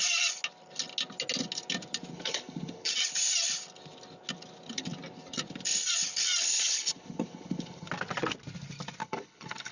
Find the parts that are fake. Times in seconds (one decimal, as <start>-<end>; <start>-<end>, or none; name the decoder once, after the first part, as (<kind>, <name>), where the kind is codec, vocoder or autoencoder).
2.1-2.9 (codec, HILCodec); 6.4-7.9; 9.0-9.7